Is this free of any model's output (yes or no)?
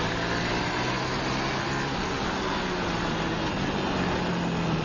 yes